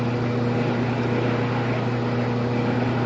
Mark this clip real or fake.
real